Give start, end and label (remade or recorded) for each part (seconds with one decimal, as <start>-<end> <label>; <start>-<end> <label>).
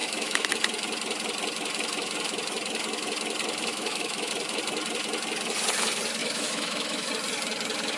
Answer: 0.0-0.5 remade; 0.5-3.7 recorded; 3.7-4.3 remade; 4.3-6.2 recorded; 6.2-7.1 remade; 7.1-8.0 recorded